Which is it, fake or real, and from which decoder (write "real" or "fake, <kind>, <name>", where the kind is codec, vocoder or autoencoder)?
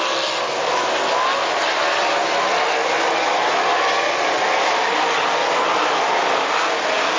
real